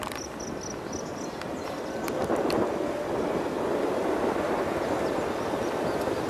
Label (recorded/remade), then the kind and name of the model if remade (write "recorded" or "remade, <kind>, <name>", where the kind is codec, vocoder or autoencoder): recorded